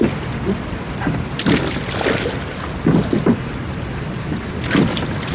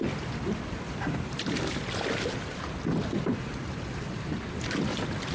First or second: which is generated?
second